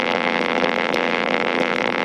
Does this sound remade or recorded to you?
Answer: remade